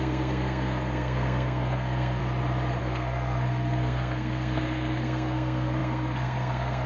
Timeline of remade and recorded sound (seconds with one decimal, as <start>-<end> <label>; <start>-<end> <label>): 0.0-2.2 remade; 2.2-2.8 recorded; 2.8-6.9 remade